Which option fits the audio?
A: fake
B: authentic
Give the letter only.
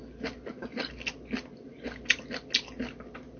B